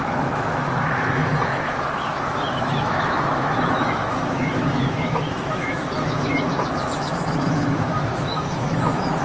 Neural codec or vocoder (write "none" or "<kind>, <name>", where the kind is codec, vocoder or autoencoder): autoencoder, DAC-VAE